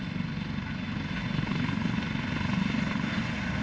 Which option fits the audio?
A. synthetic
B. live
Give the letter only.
B